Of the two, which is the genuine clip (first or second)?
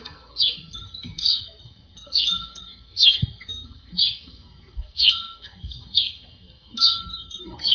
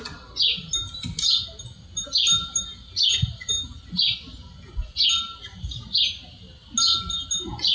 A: second